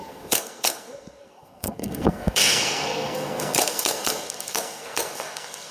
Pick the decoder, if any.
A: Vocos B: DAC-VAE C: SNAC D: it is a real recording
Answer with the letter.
C